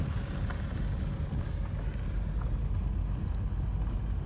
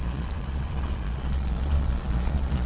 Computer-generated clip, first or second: second